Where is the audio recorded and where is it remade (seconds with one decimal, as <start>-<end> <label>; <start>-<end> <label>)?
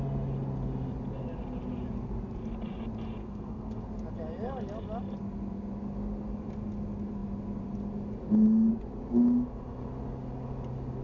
0.0-3.2 recorded; 3.2-3.8 remade; 3.8-11.0 recorded